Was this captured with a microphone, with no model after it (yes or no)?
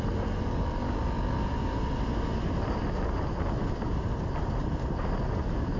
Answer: yes